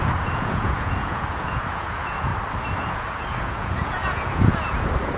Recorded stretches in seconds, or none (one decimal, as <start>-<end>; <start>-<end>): 2.3-2.9